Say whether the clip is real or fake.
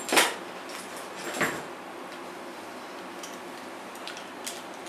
real